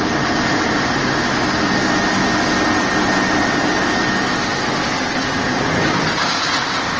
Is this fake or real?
real